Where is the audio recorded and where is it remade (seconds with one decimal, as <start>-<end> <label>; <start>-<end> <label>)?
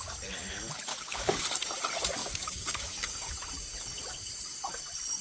0.0-0.9 recorded; 0.9-1.4 remade; 1.4-2.2 recorded; 2.2-3.3 remade; 3.3-5.2 recorded